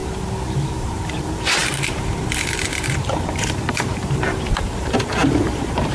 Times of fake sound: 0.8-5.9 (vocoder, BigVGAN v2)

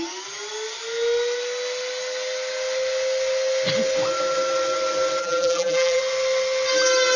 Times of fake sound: 5.2-6.0 (vocoder, BigVGAN v2)

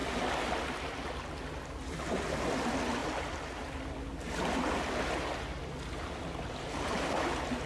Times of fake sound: none

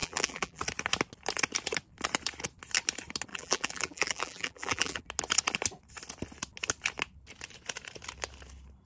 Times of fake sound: 0.0-0.6 (vocoder, BigVGAN v2); 3.3-5.0

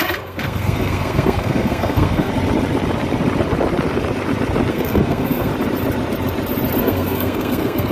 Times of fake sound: 0.0-2.3 (codec, SNAC); 4.7-5.5; 6.8-7.9